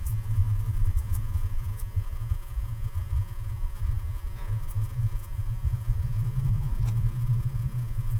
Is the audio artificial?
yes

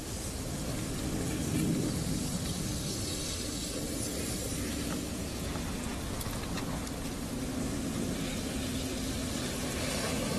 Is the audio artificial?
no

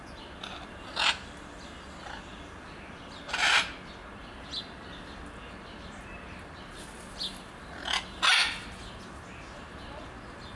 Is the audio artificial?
yes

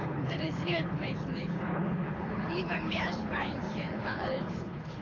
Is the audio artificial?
yes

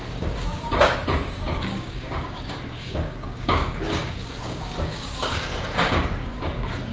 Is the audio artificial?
yes